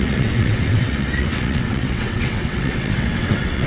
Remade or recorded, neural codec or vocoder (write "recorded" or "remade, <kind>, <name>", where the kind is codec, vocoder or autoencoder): remade, vocoder, WaveNeXt